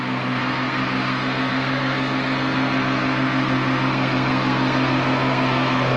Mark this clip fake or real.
fake